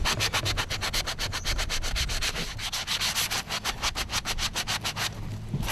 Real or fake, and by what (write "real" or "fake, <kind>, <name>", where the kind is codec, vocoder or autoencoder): real